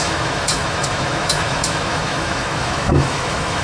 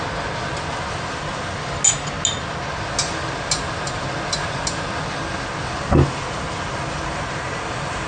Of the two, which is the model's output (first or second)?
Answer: first